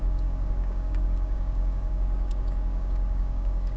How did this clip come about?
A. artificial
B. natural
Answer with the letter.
A